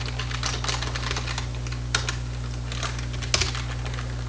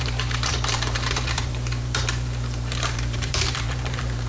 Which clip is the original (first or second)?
first